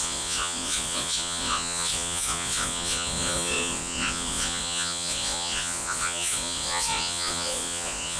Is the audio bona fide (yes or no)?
no